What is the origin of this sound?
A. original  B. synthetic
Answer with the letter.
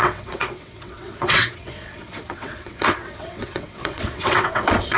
B